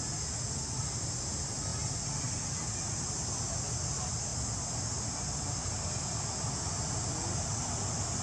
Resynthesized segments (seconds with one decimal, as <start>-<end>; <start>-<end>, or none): none